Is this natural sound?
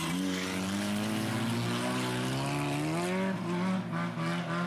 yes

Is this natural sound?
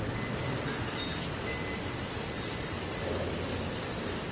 yes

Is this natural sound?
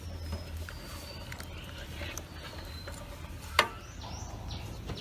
yes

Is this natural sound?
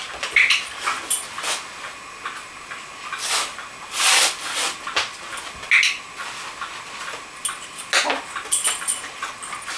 yes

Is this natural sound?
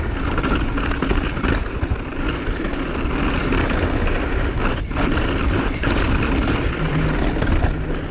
yes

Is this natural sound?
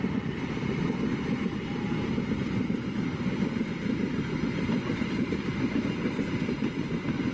yes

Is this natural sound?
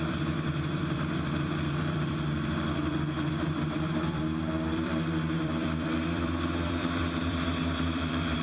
no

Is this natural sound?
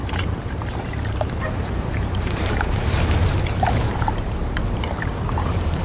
no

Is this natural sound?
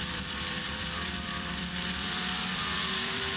no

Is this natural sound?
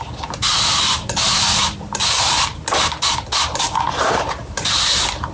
yes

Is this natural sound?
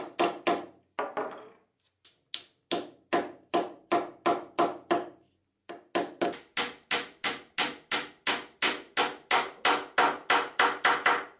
yes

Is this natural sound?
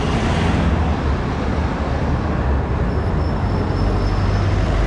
yes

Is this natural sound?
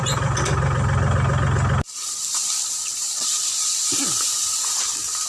yes